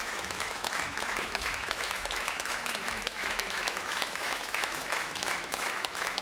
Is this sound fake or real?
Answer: fake